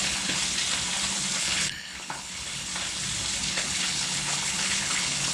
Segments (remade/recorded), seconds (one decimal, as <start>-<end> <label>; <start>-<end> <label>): 0.0-0.4 remade; 0.4-1.4 recorded; 1.4-2.7 remade; 2.7-3.4 recorded; 3.4-5.3 remade